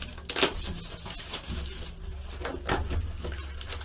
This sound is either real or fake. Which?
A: real